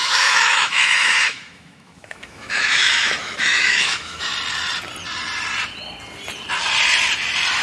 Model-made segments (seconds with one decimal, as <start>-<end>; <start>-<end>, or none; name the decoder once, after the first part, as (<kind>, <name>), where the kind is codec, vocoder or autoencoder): 0.0-4.3 (autoencoder, DAC-VAE)